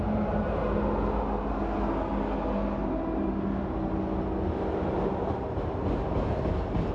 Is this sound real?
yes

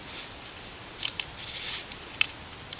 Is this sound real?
yes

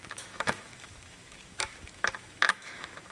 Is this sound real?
no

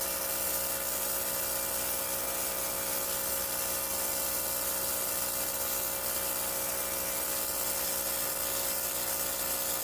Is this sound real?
yes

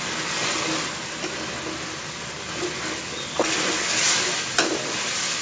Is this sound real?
yes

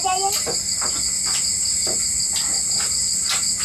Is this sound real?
yes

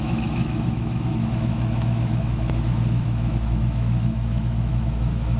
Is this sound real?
no